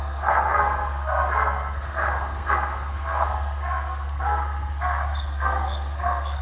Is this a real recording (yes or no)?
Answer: no